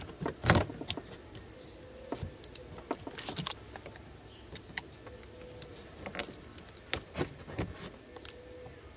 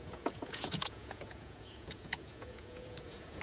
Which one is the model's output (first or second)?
second